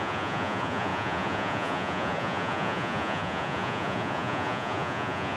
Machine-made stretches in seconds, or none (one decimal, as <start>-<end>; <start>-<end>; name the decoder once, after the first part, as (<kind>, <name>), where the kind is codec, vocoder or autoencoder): 0.0-5.4 (vocoder, Vocos)